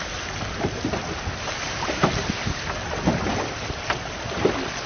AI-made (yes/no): no